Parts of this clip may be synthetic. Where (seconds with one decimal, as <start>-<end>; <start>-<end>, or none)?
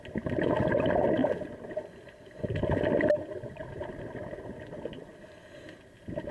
none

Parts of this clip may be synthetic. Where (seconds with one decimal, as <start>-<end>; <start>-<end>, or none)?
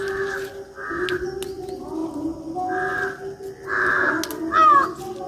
none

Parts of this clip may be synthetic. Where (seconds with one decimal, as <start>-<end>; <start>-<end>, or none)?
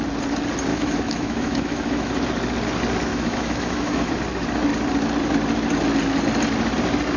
0.7-2.1; 3.1-4.1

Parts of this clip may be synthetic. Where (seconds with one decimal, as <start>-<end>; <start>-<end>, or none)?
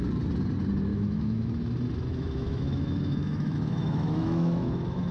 0.9-1.5; 2.1-5.1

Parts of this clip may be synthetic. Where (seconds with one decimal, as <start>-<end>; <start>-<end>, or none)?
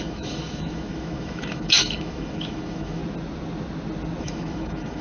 0.0-3.0; 4.2-5.0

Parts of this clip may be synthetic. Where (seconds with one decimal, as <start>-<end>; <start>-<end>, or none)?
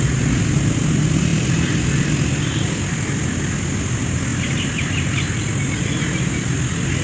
none